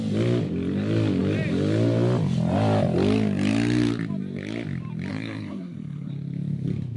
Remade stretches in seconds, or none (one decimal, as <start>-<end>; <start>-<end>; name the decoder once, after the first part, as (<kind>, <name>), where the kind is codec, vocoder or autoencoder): 5.1-6.1 (codec, SNAC)